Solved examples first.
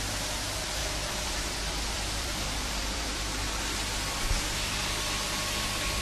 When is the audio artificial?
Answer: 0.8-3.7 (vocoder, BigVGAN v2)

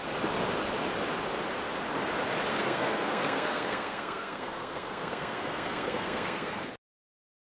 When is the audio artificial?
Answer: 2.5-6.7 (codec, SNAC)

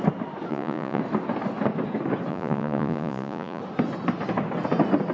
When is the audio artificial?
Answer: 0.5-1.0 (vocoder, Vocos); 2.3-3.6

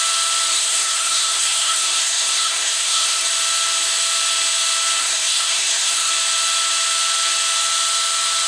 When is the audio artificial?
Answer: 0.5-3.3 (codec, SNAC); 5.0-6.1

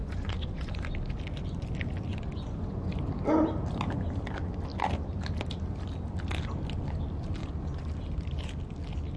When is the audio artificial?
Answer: 0.0-0.7 (vocoder, Vocos); 2.1-2.9